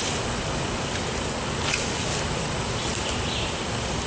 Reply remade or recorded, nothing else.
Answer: recorded